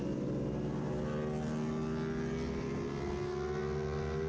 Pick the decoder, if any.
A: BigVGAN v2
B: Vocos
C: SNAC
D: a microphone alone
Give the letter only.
D